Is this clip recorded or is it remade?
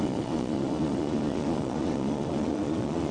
remade